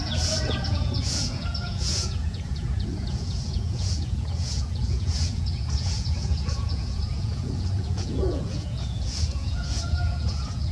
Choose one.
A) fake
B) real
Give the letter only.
A